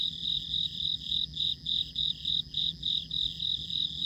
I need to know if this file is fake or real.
fake